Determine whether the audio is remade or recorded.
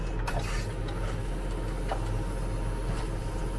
recorded